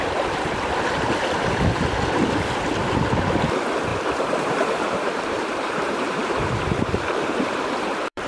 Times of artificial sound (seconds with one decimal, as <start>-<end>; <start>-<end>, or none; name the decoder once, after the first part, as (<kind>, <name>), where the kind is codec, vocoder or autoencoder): 3.9-8.3 (vocoder, BigVGAN v2)

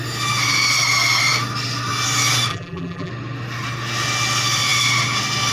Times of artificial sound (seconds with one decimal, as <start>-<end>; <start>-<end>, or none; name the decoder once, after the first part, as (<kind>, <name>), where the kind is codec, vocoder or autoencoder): 2.5-3.1 (vocoder, BigVGAN v2)

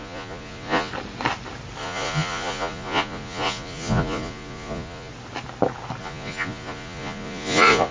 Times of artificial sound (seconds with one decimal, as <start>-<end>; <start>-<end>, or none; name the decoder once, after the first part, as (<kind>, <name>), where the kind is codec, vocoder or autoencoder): 0.0-0.9 (vocoder, Vocos); 1.8-5.1; 6.0-7.9

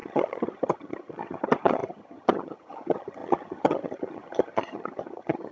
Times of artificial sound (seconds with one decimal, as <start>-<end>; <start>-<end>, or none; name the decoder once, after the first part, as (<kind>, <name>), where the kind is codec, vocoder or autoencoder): 0.0-5.5 (vocoder, HiFi-GAN)